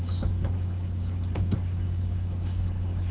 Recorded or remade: remade